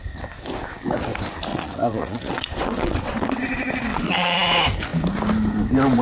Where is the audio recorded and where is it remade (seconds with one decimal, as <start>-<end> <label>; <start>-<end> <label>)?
0.0-1.5 recorded; 1.5-3.4 remade; 3.4-3.9 recorded; 3.9-4.5 remade; 4.5-6.0 recorded